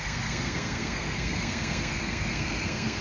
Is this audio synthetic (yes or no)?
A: yes